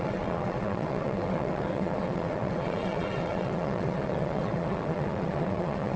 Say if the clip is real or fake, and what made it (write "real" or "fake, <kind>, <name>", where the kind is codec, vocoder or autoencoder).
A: fake, vocoder, WaveNeXt